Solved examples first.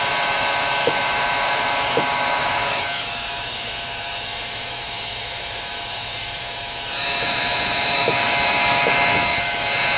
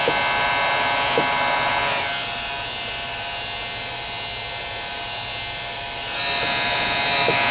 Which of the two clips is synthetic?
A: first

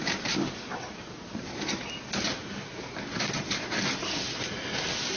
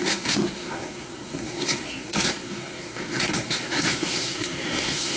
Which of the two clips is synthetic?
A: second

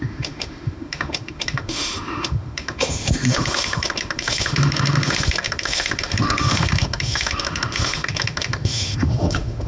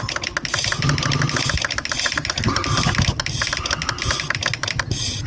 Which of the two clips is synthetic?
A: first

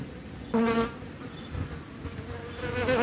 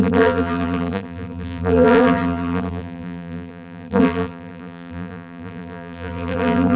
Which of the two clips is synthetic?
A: second